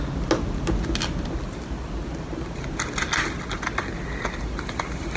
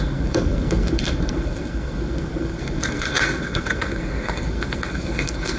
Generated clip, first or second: second